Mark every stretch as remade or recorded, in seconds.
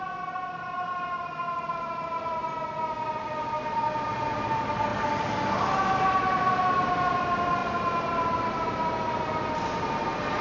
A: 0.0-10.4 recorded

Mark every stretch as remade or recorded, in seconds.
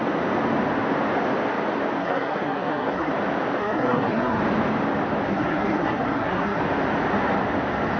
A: 0.0-2.0 recorded; 2.0-3.1 remade; 3.1-3.6 recorded; 3.6-4.4 remade; 4.4-5.3 recorded; 5.3-6.6 remade; 6.6-8.0 recorded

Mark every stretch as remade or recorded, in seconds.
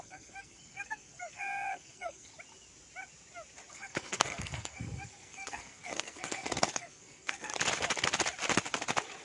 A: 0.0-2.3 remade; 2.3-3.7 recorded; 3.7-7.5 remade; 7.5-9.2 recorded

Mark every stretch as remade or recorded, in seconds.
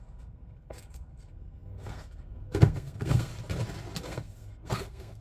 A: 0.0-3.3 remade; 3.3-4.0 recorded; 4.0-5.2 remade